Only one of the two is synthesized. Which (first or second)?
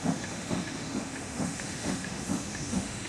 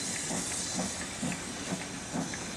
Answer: first